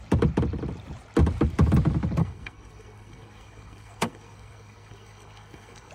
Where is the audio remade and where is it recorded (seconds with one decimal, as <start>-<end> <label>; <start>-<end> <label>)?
0.0-2.2 recorded; 2.2-5.9 remade